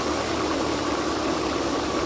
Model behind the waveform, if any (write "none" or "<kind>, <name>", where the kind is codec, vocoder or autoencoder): none